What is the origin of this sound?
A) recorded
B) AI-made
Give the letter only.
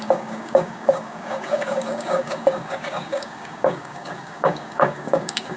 B